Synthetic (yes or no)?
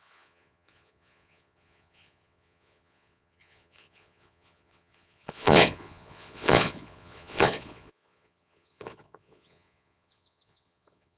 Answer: yes